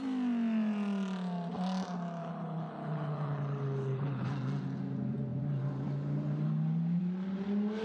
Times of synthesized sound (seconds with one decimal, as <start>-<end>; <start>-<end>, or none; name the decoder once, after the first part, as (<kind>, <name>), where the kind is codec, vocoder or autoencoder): 2.2-4.3 (codec, HILCodec)

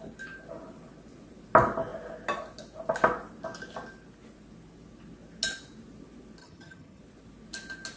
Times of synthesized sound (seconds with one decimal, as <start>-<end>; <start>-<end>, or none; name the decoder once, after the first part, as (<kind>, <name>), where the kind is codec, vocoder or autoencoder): 6.4-7.0 (vocoder, HiFi-GAN)

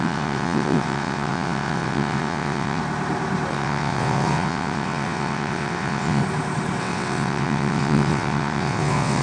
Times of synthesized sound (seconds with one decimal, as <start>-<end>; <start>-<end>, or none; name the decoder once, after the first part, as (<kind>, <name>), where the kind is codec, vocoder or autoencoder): 0.0-2.8 (vocoder, WaveNeXt); 3.5-6.2; 6.8-9.2

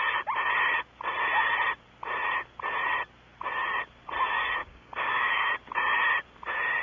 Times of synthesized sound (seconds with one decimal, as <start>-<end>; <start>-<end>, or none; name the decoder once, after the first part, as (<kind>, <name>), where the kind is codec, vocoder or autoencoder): 4.6-5.5 (codec, DAC)

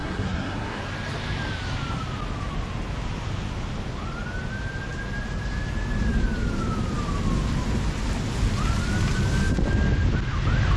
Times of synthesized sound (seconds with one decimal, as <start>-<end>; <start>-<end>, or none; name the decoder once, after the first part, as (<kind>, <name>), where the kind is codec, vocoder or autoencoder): 0.0-0.8 (codec, SNAC)

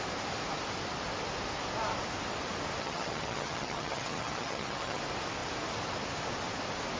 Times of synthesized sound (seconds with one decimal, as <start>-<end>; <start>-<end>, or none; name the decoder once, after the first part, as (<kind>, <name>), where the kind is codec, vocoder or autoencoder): 2.8-5.0 (vocoder, HiFi-GAN)

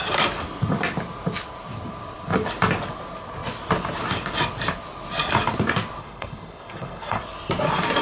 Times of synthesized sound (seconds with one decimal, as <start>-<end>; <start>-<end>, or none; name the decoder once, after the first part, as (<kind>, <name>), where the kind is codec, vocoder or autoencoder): 6.0-7.2 (codec, SNAC)

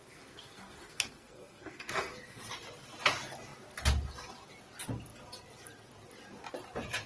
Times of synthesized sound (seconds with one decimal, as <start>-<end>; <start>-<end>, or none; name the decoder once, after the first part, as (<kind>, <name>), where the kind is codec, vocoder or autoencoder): 0.0-2.4 (codec, SNAC)